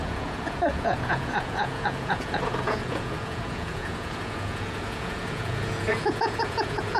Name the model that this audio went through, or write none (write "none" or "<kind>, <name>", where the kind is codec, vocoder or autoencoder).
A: vocoder, Vocos